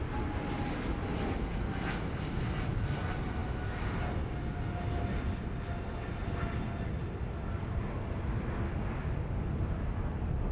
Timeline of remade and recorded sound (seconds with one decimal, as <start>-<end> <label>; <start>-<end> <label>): 0.0-10.5 recorded